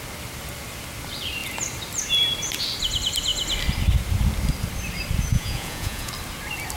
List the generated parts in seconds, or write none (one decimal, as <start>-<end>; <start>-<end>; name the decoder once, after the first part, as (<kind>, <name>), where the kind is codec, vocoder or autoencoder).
5.3-6.1 (vocoder, Vocos)